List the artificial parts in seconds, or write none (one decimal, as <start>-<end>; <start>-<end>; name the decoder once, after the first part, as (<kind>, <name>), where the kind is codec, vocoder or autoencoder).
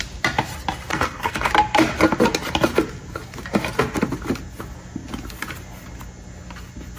0.9-1.5 (codec, SNAC)